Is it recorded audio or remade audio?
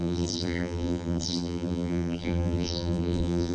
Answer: remade